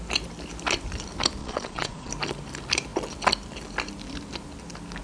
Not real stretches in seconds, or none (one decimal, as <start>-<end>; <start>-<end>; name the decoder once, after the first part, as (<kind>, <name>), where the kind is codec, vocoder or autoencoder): 1.4-2.1 (vocoder, Vocos)